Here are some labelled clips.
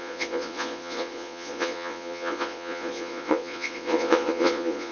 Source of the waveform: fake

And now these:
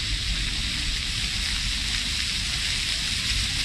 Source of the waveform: real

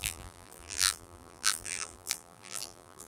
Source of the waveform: fake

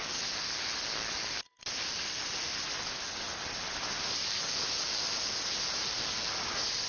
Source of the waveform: real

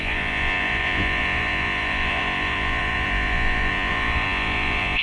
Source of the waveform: fake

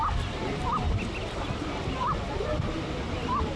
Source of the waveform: real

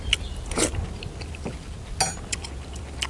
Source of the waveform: real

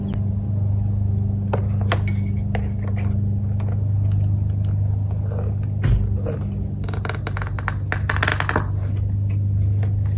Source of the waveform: real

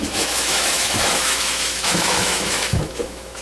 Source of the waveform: fake